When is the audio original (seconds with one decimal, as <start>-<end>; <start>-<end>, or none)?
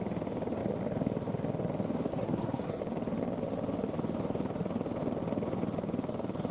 0.0-2.1; 2.8-6.5